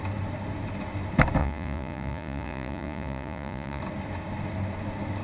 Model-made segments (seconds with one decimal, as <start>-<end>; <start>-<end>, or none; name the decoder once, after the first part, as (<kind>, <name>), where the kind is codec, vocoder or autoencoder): 1.4-3.8 (vocoder, Vocos)